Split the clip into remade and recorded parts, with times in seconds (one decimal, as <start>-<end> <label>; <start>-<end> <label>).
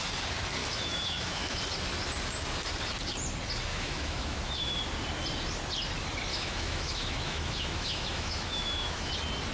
0.0-0.6 recorded; 0.6-1.6 remade; 1.6-3.7 recorded; 3.7-4.8 remade; 4.8-6.3 recorded; 6.3-9.1 remade; 9.1-9.5 recorded